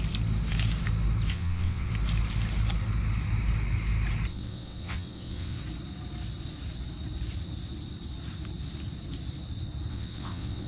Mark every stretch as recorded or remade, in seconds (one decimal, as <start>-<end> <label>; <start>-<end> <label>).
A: 0.0-1.3 recorded; 1.3-1.9 remade; 1.9-4.3 recorded; 4.3-5.6 remade; 5.6-9.9 recorded; 9.9-10.7 remade